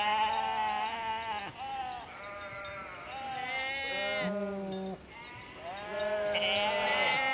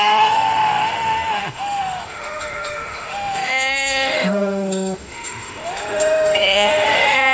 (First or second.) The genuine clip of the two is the first